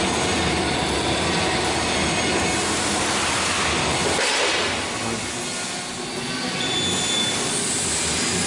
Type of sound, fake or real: real